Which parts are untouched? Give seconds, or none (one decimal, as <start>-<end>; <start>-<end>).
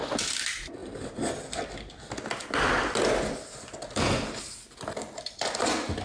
0.0-6.0